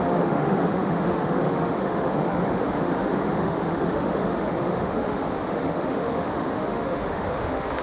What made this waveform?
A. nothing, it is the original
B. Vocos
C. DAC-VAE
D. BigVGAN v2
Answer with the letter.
C